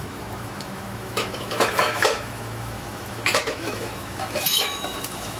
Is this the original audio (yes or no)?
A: no